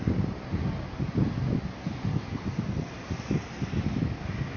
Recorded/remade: recorded